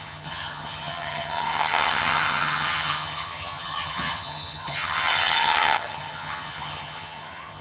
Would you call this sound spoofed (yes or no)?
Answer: yes